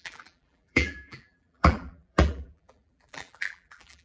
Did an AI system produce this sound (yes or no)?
yes